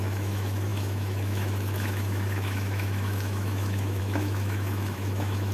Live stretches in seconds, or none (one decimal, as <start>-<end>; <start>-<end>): none